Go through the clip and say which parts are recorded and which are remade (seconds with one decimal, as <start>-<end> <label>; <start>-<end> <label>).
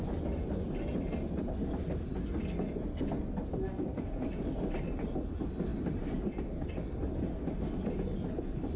0.0-8.8 recorded